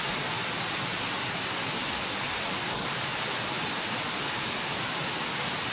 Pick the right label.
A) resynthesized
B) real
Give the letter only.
B